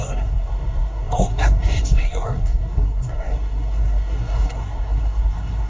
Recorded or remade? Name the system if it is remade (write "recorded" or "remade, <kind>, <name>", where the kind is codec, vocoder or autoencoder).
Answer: remade, codec, SNAC